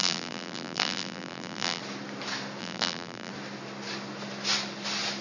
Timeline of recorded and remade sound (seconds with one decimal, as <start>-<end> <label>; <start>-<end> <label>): 0.0-1.8 remade; 1.8-2.6 recorded; 2.6-3.3 remade; 3.3-5.2 recorded